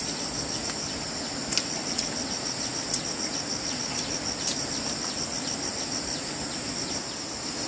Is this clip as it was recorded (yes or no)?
yes